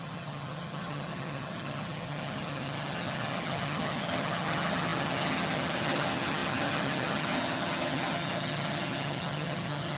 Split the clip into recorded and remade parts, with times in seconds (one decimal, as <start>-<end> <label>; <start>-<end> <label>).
0.0-10.0 remade